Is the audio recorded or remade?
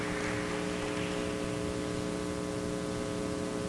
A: recorded